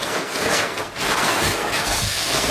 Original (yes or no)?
no